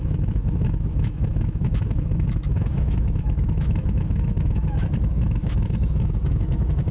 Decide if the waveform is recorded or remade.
remade